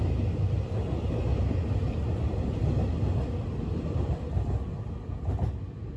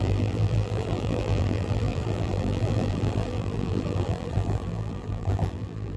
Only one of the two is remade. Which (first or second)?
second